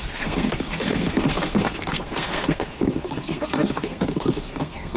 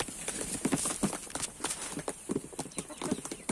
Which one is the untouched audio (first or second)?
second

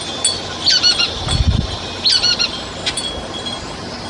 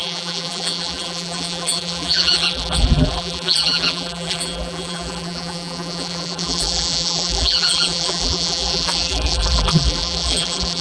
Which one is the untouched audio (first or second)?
first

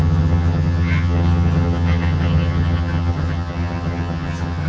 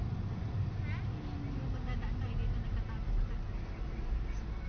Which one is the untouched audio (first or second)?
second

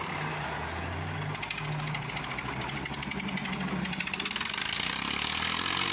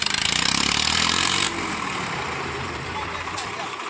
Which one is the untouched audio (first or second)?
first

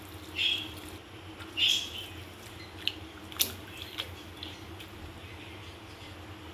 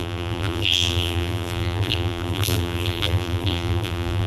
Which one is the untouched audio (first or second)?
first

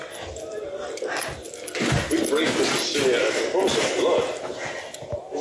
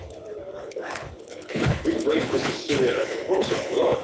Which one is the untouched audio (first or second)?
first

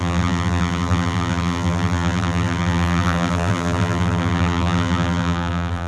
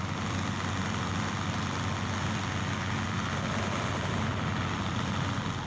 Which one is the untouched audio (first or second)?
second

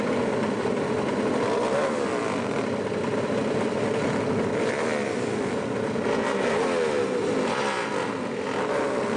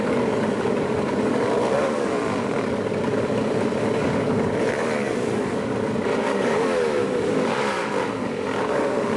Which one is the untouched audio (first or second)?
first